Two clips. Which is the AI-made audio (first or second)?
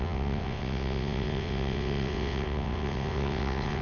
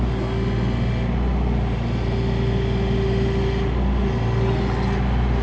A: first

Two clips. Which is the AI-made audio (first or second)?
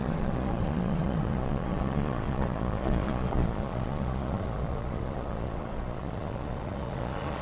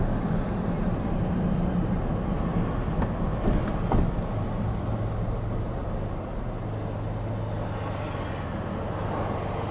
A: first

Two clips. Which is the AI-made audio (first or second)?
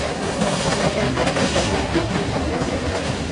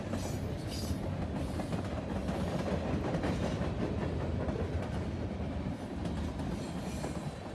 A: first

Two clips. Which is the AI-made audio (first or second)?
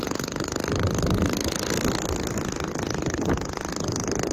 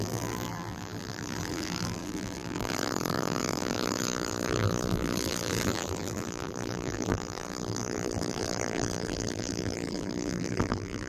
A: second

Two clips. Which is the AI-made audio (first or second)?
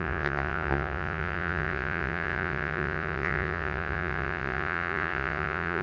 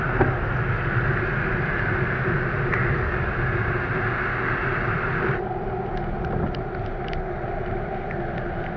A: first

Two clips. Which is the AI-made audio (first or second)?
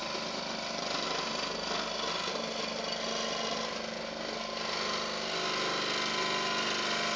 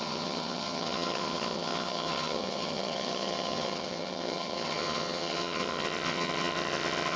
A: second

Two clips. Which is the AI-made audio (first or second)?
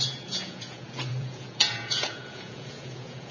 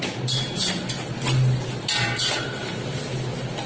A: first